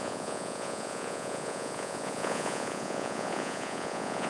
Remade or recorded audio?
remade